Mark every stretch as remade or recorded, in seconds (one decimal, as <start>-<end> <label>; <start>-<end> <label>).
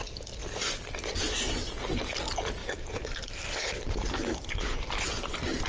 0.0-2.6 recorded; 2.6-5.7 remade